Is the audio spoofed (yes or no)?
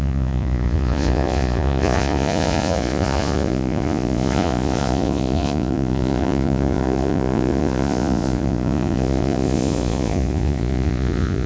yes